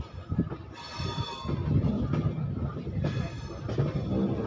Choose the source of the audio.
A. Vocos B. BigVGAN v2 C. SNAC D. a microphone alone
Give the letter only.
D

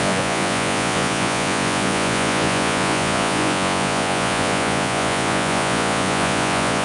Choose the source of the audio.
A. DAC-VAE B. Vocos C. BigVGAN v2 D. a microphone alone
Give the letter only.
B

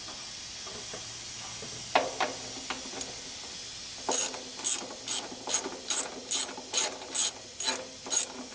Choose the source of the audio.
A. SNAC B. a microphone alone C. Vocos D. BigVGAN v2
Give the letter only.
B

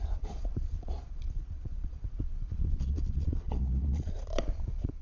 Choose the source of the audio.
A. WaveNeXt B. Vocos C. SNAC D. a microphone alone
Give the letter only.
B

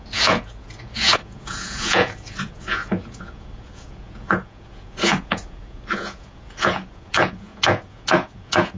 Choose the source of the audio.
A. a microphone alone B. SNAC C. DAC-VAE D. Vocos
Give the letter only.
D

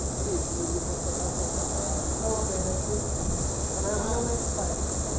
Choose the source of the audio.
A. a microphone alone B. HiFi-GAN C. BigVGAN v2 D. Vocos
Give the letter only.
A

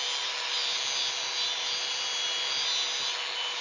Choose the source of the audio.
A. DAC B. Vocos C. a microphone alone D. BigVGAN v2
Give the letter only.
C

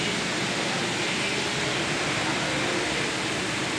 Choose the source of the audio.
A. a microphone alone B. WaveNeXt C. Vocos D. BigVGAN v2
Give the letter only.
A